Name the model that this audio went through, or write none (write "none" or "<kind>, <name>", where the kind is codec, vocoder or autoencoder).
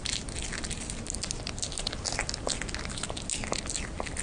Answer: none